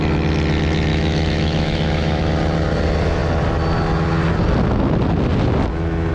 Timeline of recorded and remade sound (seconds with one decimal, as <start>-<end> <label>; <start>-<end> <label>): 0.0-0.9 recorded; 0.9-2.2 remade; 2.2-6.1 recorded